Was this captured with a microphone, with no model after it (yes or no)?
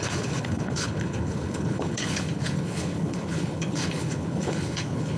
no